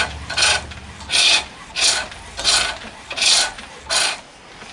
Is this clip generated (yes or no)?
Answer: no